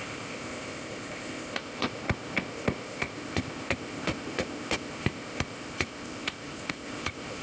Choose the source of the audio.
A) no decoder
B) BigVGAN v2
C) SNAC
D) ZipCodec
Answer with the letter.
D